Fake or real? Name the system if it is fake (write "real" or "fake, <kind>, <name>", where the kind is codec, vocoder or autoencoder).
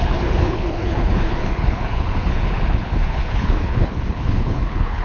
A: fake, codec, HILCodec